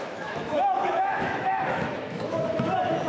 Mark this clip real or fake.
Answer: fake